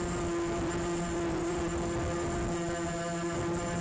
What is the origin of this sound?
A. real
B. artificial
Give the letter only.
A